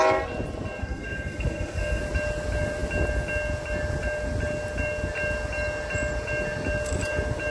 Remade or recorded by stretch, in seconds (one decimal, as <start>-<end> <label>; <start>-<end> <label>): 0.0-0.8 recorded; 0.8-2.0 remade; 2.0-7.5 recorded

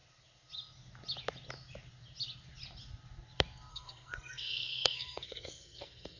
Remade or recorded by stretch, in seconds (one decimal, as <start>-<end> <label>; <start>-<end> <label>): 0.0-3.7 recorded; 3.7-6.2 remade